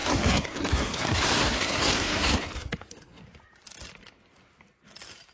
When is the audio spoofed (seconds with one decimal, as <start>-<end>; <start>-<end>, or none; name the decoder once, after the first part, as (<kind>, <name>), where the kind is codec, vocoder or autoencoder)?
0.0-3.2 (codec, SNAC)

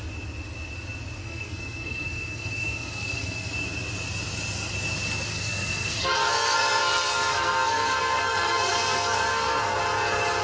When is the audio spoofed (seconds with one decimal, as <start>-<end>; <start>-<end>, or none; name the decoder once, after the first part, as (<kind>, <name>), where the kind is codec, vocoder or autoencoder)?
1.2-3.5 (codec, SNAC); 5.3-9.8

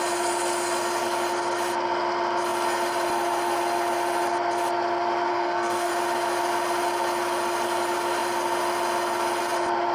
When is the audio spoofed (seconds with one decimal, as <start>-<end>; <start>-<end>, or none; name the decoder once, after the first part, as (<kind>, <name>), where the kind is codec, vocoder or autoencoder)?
5.3-5.9 (codec, SNAC)

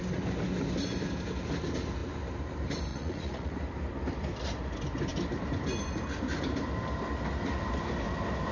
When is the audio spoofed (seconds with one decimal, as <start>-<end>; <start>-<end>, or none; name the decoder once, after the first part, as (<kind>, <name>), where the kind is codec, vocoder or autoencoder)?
2.9-3.5 (vocoder, Vocos)